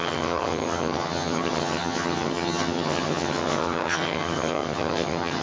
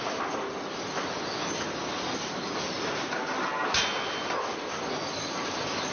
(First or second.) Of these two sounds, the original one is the second